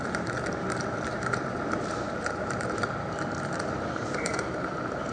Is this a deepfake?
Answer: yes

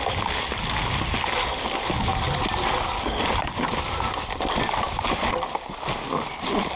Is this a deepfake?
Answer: no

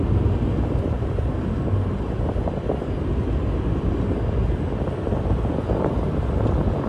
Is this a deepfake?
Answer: no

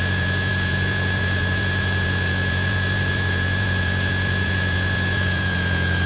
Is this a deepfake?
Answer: yes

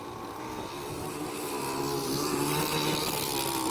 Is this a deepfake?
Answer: no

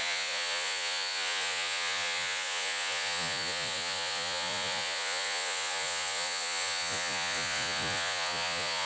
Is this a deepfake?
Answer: yes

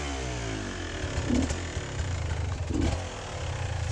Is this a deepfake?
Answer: no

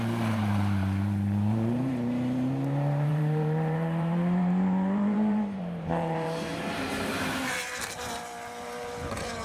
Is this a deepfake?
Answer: yes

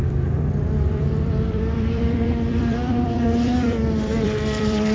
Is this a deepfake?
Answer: yes